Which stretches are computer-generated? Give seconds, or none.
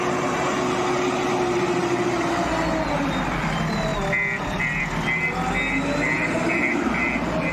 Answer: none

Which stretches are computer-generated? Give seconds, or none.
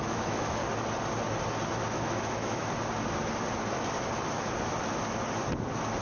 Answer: 0.0-0.6 (autoencoder, DAC-VAE); 1.7-2.6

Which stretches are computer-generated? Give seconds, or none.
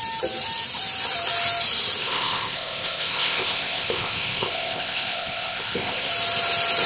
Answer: 2.0-6.1 (codec, ZipCodec)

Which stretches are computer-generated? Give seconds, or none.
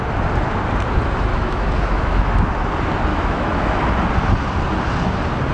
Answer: 1.3-2.5 (autoencoder, DAC-VAE); 3.1-3.8